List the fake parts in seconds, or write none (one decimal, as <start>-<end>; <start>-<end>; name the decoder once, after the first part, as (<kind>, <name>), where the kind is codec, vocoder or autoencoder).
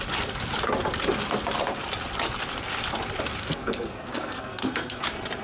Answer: 3.4-5.0 (codec, SNAC)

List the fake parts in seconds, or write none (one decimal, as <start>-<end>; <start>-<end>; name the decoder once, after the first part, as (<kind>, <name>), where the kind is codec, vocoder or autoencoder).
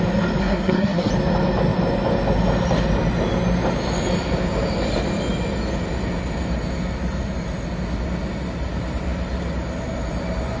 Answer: 0.4-1.1 (codec, SNAC)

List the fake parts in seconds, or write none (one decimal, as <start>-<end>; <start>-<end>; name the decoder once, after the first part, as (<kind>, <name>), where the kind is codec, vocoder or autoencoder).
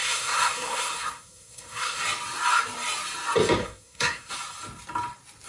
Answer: 0.0-2.0 (codec, SNAC); 3.6-4.3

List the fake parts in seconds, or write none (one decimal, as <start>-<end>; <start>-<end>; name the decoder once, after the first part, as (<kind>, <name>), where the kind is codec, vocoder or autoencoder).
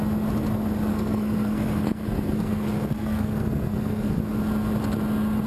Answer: 0.9-4.2 (codec, SNAC)